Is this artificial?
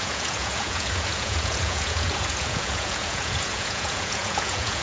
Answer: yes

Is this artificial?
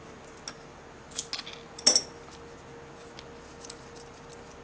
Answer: no